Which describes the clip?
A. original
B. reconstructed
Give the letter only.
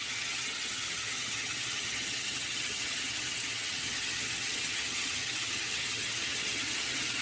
B